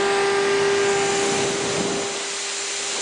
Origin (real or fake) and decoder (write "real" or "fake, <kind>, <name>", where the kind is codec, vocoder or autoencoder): real